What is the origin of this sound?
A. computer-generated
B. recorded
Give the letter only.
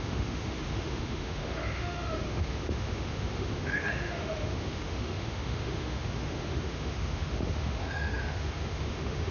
A